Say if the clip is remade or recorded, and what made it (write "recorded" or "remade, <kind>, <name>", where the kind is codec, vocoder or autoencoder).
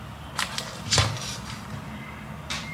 recorded